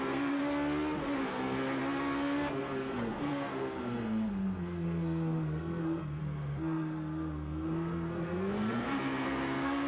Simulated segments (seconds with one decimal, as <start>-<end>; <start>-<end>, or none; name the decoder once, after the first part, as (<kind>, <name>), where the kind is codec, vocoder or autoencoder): 0.0-0.4 (codec, SNAC); 1.2-1.8; 2.5-9.9